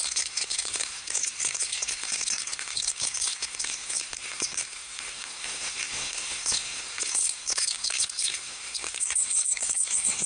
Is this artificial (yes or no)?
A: yes